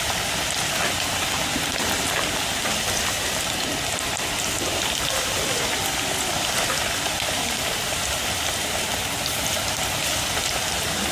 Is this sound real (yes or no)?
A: no